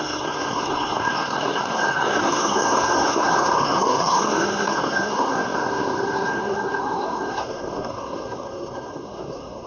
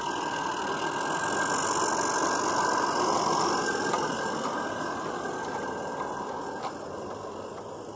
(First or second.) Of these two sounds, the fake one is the first